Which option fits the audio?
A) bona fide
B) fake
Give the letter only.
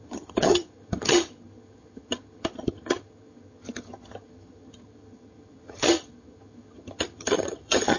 B